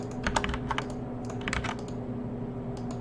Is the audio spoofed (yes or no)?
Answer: no